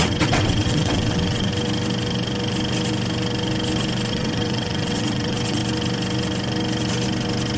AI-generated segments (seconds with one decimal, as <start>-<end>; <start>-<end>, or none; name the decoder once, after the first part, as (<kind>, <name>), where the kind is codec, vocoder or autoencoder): 0.0-1.5 (vocoder, WaveNeXt); 4.1-5.6